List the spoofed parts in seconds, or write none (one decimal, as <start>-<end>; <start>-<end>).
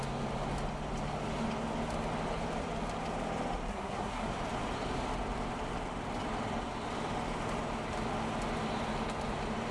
3.7-4.3